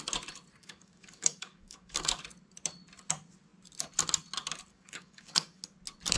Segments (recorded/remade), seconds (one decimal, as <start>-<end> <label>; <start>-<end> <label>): 0.0-0.6 recorded; 0.6-2.2 remade; 2.2-4.7 recorded; 4.7-5.6 remade; 5.6-6.2 recorded